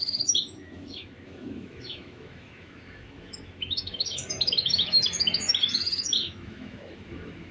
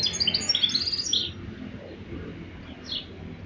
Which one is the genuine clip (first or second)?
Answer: second